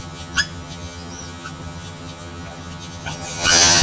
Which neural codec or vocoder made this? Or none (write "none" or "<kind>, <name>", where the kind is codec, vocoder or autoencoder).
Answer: vocoder, HiFi-GAN